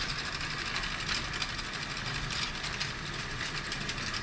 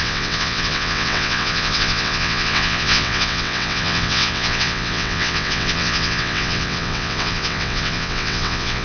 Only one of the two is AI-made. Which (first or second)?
second